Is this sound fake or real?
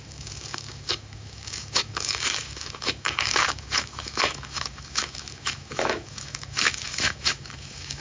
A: fake